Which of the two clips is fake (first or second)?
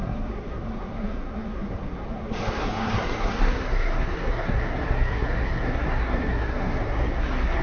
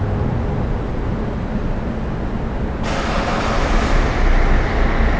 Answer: first